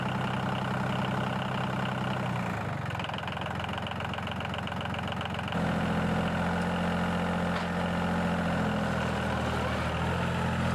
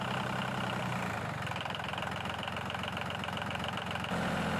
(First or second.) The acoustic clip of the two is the first